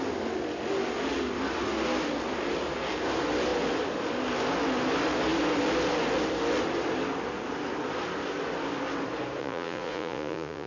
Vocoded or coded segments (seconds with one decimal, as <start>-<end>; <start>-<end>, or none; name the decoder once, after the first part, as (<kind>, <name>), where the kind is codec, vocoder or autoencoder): 9.4-10.7 (vocoder, Vocos)